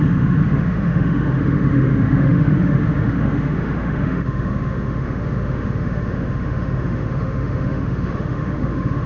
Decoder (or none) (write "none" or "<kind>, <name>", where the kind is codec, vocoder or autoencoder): autoencoder, DAC-VAE